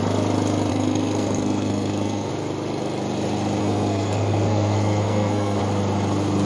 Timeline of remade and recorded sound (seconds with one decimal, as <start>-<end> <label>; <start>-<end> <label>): 0.0-0.7 recorded; 0.7-2.3 remade; 2.3-3.6 recorded; 3.6-5.6 remade; 5.6-6.5 recorded